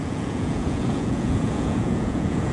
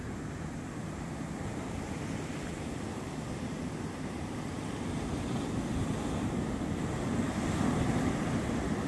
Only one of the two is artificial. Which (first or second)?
first